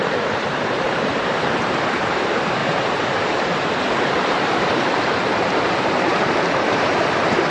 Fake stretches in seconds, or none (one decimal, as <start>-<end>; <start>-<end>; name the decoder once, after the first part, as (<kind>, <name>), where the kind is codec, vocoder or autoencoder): 0.0-7.5 (vocoder, BigVGAN v2)